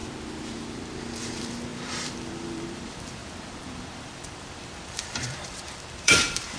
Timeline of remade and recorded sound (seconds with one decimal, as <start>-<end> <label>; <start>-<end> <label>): 0.0-1.2 recorded; 1.2-6.6 remade